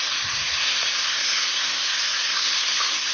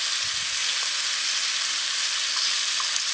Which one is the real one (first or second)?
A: second